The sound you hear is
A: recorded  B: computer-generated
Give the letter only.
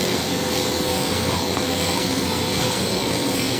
B